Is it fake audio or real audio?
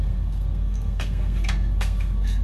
fake